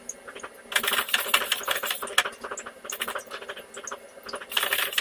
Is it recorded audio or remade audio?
recorded